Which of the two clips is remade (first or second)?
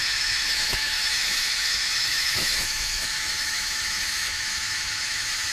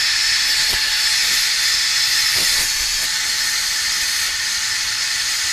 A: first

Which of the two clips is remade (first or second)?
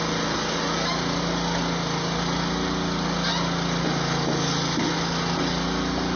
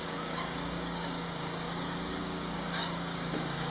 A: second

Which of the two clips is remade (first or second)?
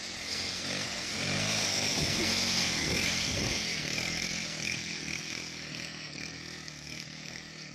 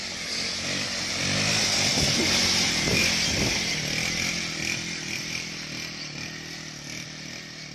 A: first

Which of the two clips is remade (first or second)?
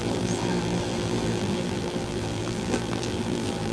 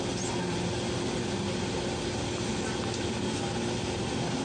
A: first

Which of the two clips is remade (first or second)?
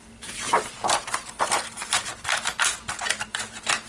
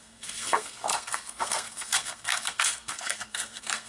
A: second